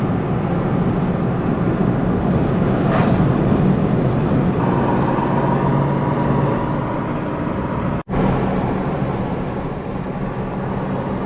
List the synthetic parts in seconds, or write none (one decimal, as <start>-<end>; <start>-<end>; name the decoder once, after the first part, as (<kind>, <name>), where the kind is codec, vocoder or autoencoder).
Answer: none